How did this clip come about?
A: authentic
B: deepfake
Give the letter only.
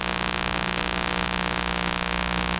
B